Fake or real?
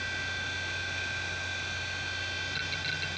real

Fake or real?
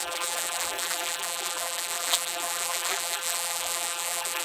fake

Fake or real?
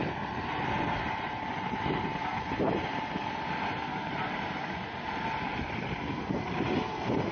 fake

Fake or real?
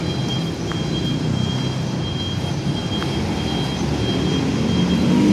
real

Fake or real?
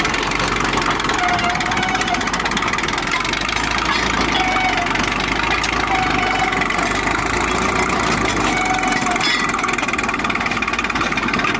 real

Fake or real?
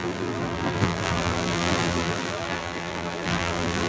fake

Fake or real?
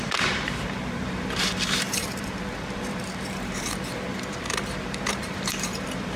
fake